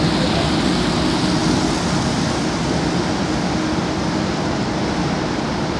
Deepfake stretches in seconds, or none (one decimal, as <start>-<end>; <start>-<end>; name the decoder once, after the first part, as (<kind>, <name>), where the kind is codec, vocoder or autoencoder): none